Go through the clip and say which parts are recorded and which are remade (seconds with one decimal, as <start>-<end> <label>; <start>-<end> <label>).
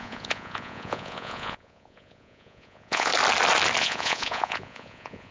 0.0-3.1 remade; 3.1-3.8 recorded; 3.8-5.3 remade